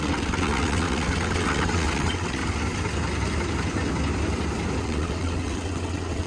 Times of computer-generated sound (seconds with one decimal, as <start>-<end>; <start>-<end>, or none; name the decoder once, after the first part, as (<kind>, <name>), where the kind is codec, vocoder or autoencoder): 0.0-2.4 (vocoder, WaveNeXt); 4.8-6.3